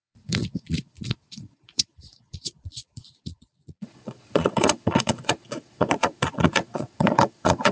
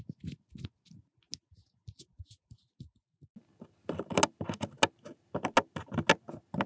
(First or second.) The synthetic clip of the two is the first